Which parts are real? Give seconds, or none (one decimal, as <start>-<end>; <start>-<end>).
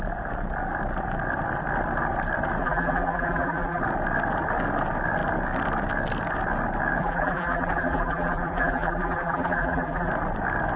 0.0-2.6; 3.8-7.0; 10.1-10.8